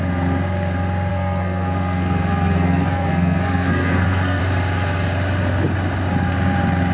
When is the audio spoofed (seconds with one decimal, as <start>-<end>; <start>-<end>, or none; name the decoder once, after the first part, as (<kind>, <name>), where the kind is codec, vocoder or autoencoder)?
1.1-4.4 (codec, SNAC)